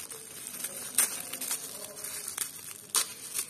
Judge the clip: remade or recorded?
recorded